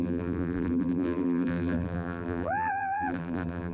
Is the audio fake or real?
fake